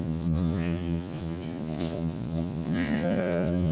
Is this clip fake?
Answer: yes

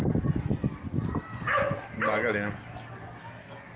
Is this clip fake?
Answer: no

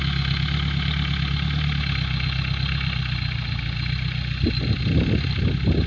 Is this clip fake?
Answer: no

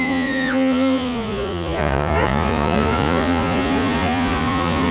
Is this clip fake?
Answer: yes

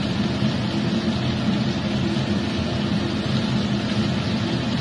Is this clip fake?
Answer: no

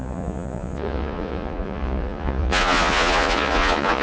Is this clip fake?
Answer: yes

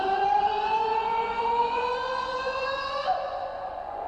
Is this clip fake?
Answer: yes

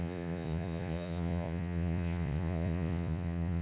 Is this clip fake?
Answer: yes